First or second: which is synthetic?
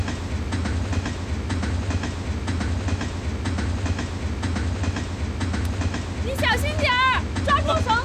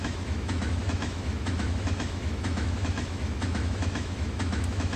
second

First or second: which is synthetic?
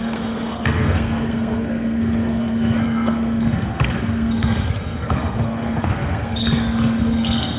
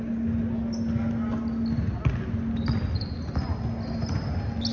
first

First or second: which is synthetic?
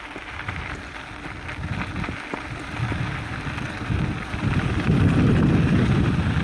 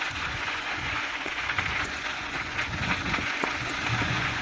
second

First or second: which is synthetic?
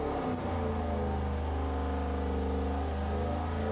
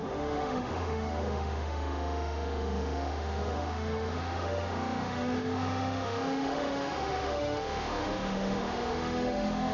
second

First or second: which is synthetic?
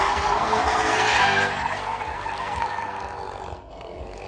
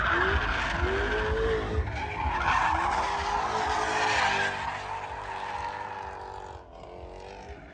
first